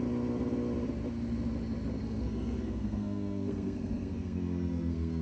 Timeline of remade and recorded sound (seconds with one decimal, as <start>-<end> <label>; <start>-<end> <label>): 0.0-2.0 recorded; 2.0-5.2 remade